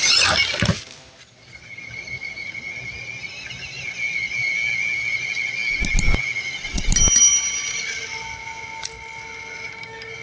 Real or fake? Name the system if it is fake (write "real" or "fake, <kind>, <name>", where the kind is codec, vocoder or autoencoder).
real